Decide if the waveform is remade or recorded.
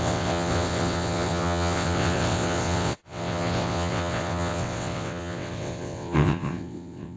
remade